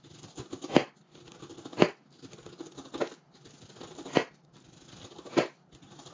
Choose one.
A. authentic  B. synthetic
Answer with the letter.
A